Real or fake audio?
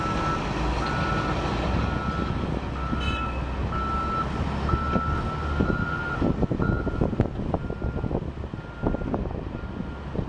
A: real